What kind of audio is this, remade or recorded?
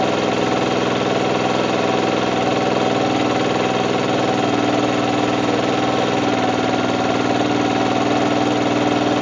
recorded